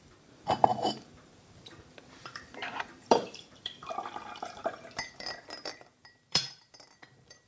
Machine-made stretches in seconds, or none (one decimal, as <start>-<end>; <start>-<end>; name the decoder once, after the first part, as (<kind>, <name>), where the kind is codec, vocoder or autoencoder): 0.0-7.5 (vocoder, BigVGAN v2)